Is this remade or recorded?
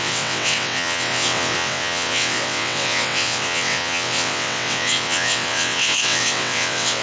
remade